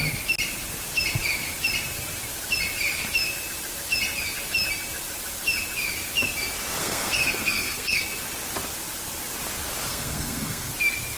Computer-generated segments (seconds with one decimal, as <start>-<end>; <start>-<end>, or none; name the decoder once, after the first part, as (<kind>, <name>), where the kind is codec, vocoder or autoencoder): 6.8-8.0 (codec, SNAC); 9.9-10.7